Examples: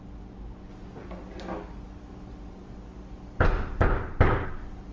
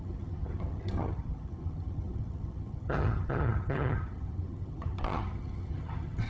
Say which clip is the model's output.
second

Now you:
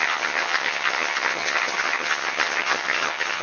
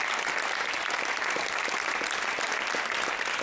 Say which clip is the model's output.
first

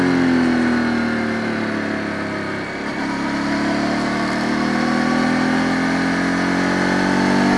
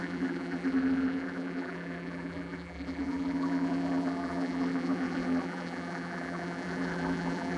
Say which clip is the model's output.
second